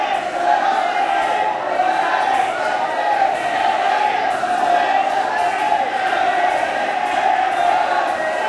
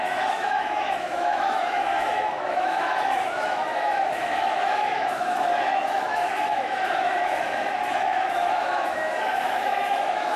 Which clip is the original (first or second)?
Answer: first